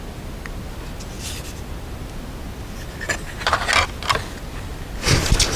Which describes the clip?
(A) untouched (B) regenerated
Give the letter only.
A